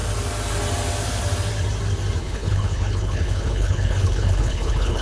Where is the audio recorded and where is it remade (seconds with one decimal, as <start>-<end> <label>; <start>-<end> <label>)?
0.0-2.2 recorded; 2.2-5.0 remade